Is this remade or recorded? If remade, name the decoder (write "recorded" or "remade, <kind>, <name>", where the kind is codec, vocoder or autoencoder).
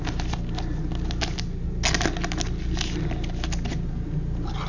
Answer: recorded